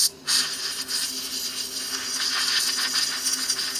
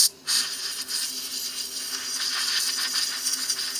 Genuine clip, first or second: first